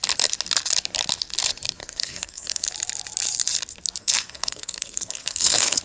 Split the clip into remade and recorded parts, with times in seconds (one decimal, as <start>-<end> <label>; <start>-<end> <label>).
0.0-1.8 recorded; 1.8-2.7 remade; 2.7-4.0 recorded; 4.0-5.8 remade